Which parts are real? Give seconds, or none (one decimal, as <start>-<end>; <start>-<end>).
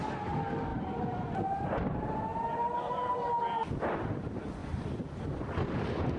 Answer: 0.0-0.7; 1.6-2.3; 3.3-6.2